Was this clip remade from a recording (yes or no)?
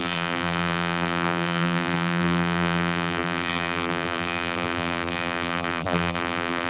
yes